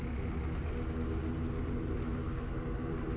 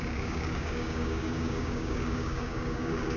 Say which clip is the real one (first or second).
first